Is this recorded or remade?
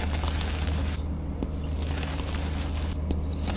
recorded